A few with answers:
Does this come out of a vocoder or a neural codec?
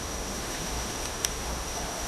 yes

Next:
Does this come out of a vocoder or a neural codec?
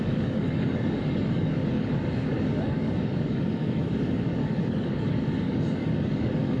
yes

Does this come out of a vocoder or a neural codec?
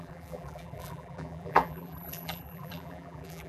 yes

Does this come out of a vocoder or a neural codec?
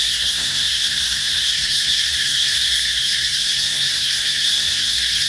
yes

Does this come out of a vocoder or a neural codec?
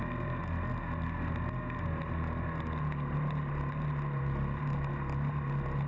no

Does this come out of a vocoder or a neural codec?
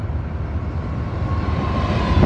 no